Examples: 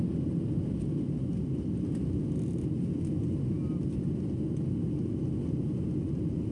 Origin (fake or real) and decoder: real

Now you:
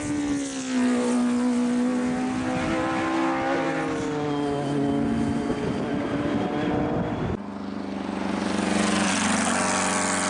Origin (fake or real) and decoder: real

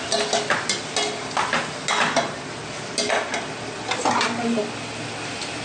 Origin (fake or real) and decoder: real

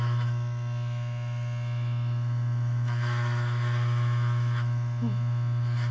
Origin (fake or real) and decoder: fake, autoencoder, DAC-VAE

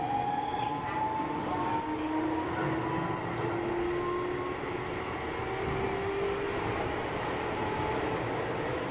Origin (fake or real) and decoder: real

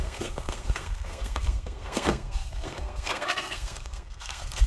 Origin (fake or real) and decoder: fake, codec, SNAC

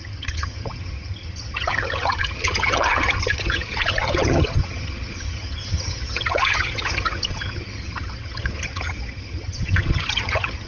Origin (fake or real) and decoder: fake, vocoder, HiFi-GAN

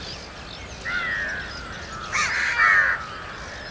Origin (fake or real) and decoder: real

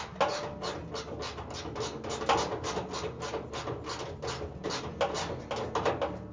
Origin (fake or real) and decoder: real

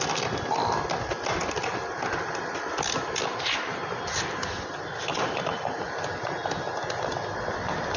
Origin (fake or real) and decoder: real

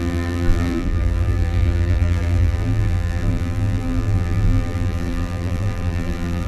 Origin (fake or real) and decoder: fake, vocoder, BigVGAN v2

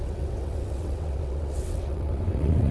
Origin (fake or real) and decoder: fake, vocoder, WaveNeXt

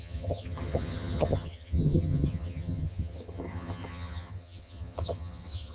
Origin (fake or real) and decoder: fake, vocoder, HiFi-GAN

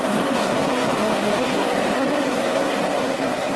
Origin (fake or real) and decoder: fake, codec, SNAC